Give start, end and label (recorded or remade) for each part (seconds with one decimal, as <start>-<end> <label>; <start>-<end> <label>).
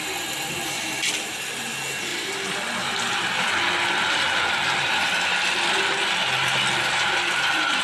0.0-7.8 recorded